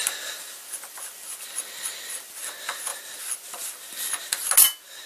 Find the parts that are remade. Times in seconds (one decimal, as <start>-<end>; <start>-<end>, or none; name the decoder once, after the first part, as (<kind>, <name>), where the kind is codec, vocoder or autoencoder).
none